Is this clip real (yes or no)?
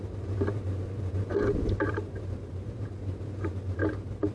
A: no